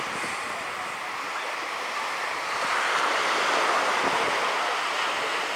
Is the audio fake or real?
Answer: real